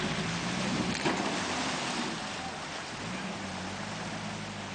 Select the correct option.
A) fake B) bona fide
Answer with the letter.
B